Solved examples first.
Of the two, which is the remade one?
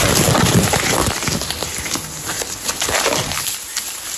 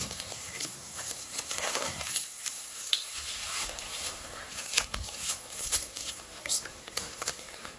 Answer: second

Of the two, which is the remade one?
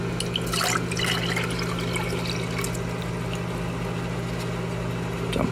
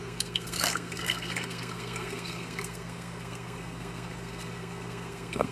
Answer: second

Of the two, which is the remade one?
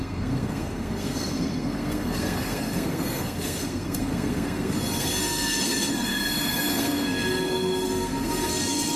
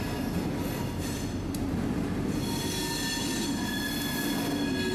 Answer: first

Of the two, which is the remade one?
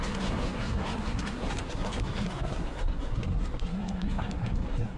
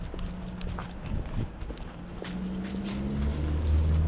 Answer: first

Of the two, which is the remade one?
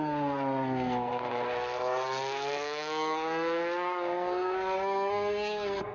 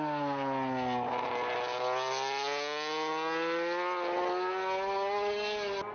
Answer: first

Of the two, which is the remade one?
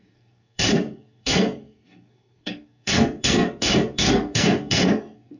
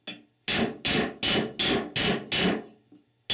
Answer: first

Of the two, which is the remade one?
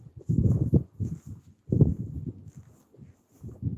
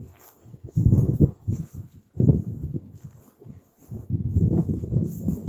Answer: second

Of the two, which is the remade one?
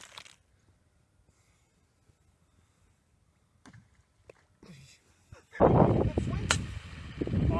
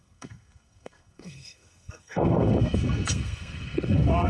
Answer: second